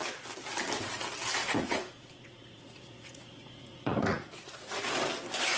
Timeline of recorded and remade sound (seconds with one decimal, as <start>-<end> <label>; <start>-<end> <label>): 0.0-1.4 recorded; 1.4-4.8 remade; 4.8-5.6 recorded